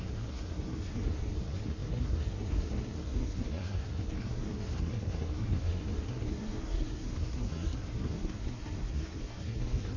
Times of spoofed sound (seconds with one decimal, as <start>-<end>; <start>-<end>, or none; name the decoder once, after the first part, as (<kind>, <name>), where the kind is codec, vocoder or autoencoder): 0.0-10.0 (codec, SNAC)